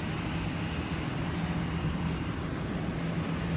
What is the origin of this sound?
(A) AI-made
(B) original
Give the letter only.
B